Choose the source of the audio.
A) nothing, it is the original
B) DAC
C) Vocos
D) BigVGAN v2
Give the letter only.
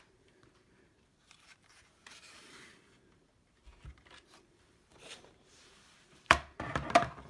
D